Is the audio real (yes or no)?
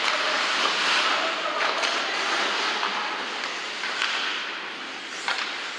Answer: yes